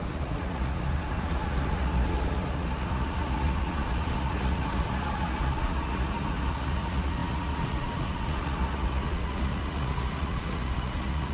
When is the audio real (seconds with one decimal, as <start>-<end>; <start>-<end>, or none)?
none